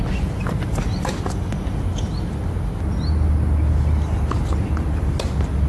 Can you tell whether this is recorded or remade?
recorded